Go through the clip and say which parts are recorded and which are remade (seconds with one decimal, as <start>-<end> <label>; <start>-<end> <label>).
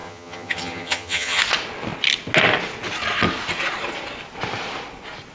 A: 0.0-1.4 remade; 1.4-5.3 recorded